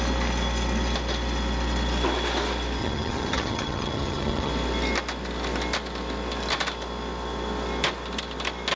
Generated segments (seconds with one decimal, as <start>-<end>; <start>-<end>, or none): 2.8-4.5